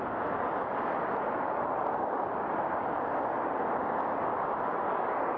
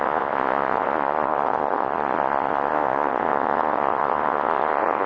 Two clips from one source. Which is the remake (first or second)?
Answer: second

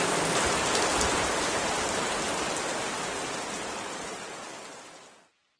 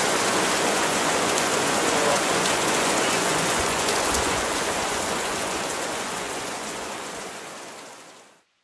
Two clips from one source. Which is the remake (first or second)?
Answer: second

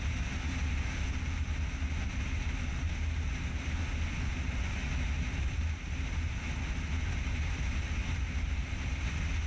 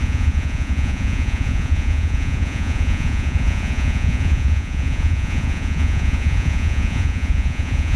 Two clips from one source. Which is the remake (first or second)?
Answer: second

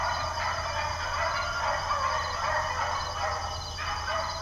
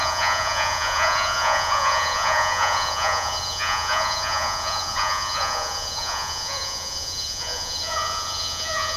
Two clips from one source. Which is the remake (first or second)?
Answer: second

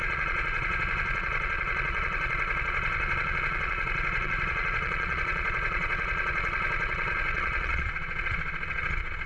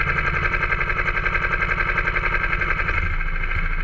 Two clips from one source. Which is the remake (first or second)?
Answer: first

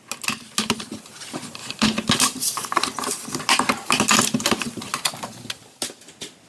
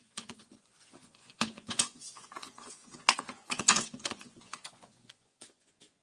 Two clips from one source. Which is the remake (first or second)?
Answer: second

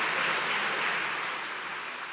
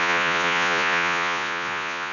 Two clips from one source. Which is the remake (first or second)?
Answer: second